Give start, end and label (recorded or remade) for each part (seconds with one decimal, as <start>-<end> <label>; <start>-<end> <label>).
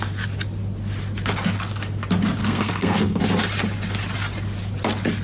0.0-2.4 recorded; 2.4-3.2 remade; 3.2-5.2 recorded